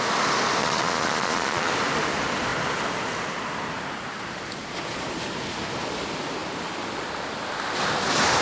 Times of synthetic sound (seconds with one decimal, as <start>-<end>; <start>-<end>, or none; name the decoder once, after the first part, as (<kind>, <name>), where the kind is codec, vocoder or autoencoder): 0.6-1.7 (vocoder, Vocos)